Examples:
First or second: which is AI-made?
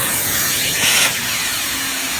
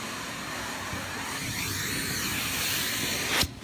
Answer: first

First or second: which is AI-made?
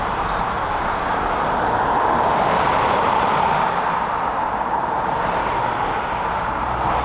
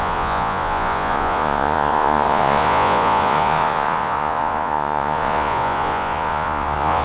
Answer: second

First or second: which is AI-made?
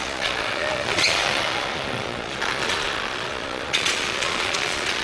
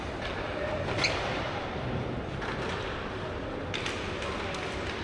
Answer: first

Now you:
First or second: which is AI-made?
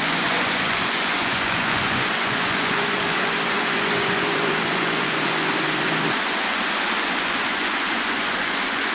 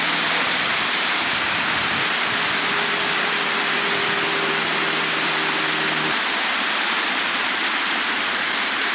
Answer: first